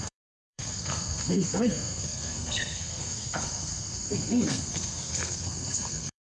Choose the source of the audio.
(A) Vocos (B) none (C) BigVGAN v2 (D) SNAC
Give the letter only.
D